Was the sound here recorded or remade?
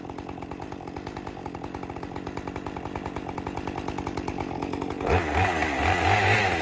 recorded